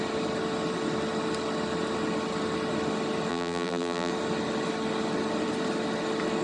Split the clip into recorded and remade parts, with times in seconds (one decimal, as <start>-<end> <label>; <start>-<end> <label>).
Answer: 0.0-3.3 recorded; 3.3-4.1 remade; 4.1-6.4 recorded